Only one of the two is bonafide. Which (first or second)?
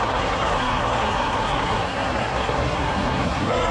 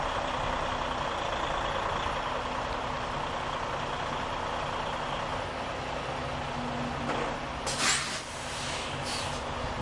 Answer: second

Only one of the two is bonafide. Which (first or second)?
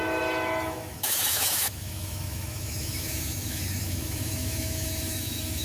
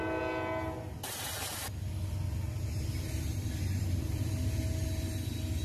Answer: second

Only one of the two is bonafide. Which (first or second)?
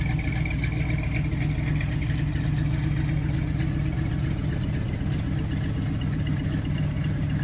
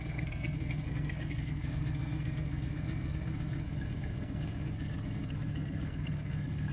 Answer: first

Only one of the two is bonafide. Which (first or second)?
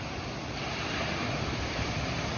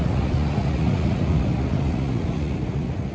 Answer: first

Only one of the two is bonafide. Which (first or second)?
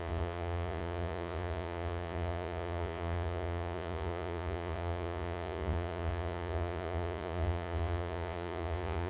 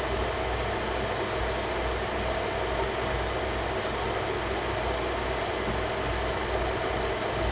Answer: second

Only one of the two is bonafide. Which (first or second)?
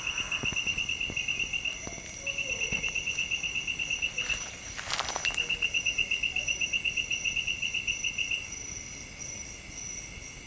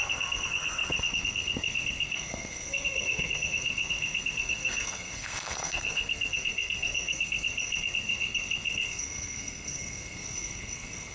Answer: first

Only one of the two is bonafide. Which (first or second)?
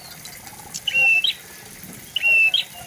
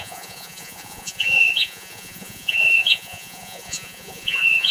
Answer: first